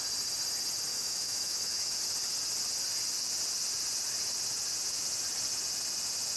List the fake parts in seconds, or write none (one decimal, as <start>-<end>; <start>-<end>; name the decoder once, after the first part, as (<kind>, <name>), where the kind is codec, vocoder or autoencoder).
0.9-2.0 (autoencoder, DAC-VAE)